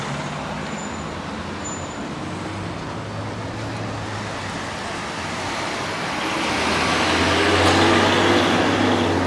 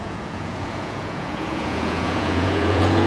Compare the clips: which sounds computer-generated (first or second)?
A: second